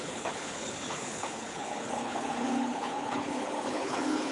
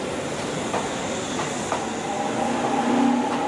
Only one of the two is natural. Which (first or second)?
second